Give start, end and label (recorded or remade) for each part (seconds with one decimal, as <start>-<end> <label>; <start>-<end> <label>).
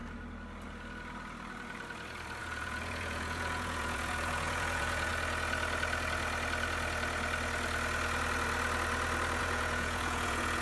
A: 0.0-2.4 recorded; 2.4-5.1 remade; 5.1-9.4 recorded; 9.4-10.6 remade